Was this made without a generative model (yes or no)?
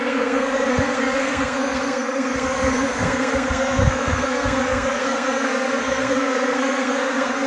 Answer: no